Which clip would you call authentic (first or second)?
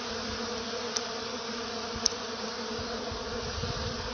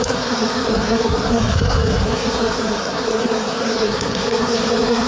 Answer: first